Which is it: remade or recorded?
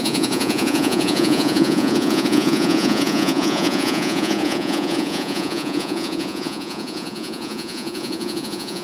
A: remade